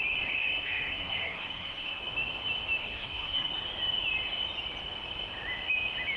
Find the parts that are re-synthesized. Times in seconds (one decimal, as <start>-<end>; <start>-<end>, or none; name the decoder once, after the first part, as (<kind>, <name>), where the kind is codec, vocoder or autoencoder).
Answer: 0.4-2.0 (codec, SNAC); 2.8-3.5